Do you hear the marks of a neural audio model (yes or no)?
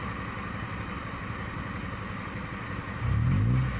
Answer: no